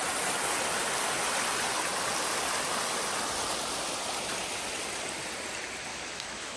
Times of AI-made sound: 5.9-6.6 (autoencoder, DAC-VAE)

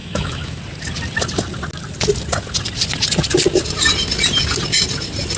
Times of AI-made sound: 0.0-0.6 (autoencoder, DAC-VAE)

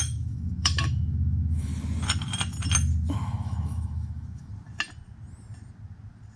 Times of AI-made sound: 0.0-1.7 (autoencoder, DAC-VAE); 3.1-4.5

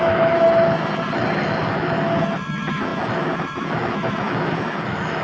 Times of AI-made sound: 0.0-5.2 (autoencoder, DAC-VAE)